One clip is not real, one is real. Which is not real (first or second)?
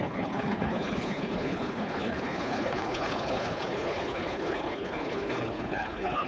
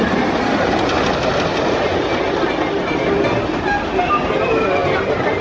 first